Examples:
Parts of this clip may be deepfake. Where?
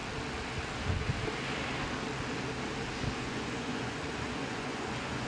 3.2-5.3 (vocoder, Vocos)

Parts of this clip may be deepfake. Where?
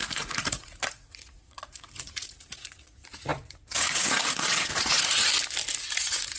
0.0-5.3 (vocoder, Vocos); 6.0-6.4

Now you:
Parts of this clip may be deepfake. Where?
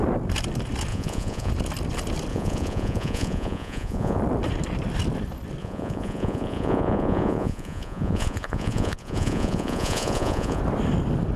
0.9-1.5 (vocoder, Vocos); 2.3-4.2; 5.6-10.6